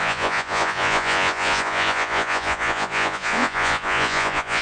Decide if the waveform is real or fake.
fake